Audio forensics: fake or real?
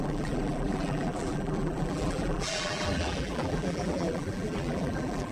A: fake